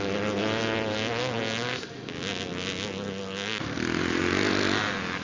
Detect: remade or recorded recorded